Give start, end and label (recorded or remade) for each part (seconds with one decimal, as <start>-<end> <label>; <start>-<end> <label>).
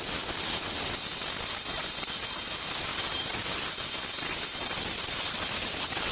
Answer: 0.0-6.1 recorded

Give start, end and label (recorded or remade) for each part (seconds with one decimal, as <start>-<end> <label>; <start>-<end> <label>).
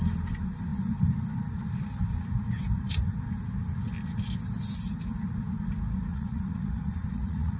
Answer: 0.0-6.1 recorded; 6.1-7.6 remade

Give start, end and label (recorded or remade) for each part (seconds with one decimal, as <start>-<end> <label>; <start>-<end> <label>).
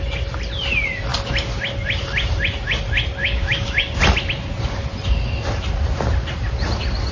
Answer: 0.0-3.2 recorded; 3.2-4.0 remade; 4.0-7.1 recorded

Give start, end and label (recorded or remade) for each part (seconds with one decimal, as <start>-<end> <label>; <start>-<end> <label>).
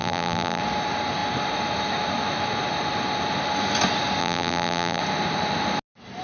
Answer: 0.0-0.6 remade; 0.6-4.2 recorded; 4.2-5.0 remade; 5.0-6.2 recorded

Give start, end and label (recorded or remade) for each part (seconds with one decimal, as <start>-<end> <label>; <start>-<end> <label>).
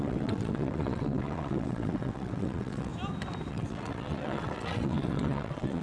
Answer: 0.0-2.9 remade; 2.9-3.5 recorded; 3.5-5.8 remade